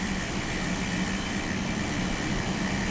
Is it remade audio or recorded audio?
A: recorded